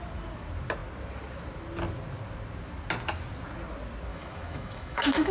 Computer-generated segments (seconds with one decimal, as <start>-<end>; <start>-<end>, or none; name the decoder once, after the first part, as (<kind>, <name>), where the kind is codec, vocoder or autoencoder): 4.1-5.3 (autoencoder, DAC-VAE)